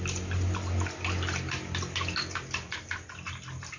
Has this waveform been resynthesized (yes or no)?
no